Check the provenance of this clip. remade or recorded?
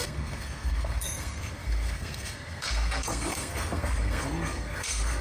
remade